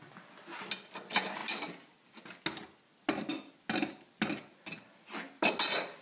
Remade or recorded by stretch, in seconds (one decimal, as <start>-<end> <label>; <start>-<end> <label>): 0.0-6.0 recorded